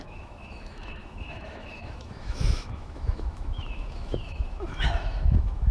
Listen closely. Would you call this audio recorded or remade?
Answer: remade